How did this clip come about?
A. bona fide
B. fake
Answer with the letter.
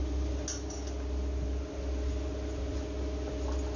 A